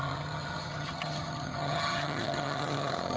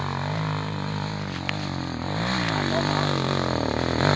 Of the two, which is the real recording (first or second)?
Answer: second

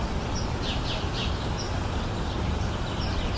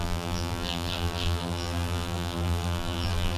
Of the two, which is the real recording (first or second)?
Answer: first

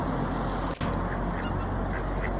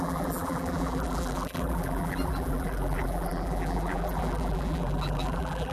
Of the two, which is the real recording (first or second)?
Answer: first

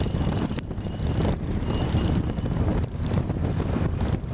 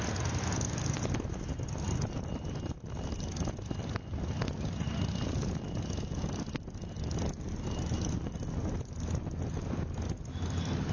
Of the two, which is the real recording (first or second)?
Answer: second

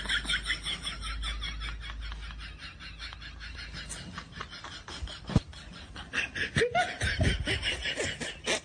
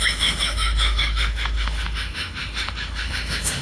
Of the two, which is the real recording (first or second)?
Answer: first